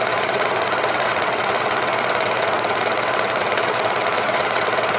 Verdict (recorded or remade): remade